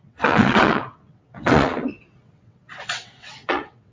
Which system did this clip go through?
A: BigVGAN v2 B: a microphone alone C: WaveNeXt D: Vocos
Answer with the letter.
C